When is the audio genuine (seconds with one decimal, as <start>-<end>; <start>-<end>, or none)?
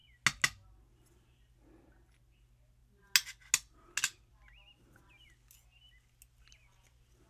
0.0-7.3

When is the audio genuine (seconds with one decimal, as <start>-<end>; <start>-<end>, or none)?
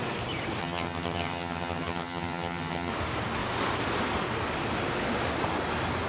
0.0-0.6; 2.9-6.1